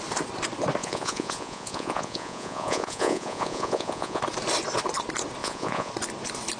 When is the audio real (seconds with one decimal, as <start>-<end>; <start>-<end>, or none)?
0.0-0.8; 4.2-5.4; 5.9-6.6